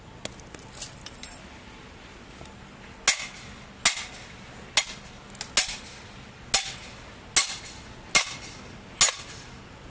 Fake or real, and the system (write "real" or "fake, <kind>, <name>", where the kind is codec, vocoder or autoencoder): real